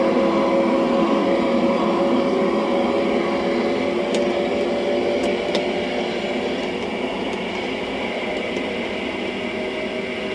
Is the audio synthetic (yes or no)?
no